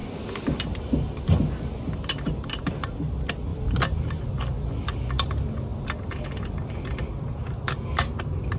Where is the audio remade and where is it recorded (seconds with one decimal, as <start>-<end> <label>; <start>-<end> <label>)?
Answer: 0.0-3.5 recorded; 3.5-4.4 remade; 4.4-8.6 recorded